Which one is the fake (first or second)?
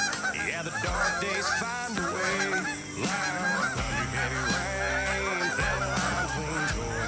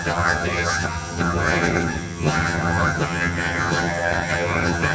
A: second